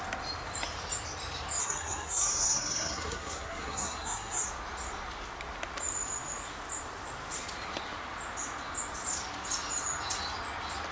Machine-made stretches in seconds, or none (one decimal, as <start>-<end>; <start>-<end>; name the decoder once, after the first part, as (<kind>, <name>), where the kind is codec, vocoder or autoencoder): 1.6-4.4 (codec, SNAC)